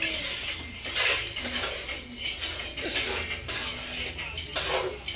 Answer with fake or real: real